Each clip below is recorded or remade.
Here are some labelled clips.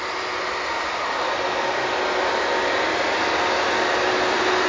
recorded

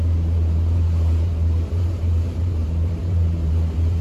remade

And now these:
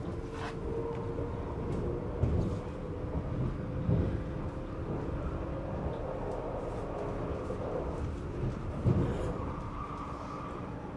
recorded